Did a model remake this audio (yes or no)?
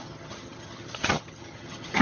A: yes